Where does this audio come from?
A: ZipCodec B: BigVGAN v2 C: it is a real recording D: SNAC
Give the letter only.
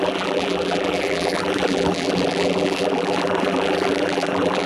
B